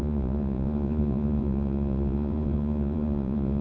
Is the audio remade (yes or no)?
yes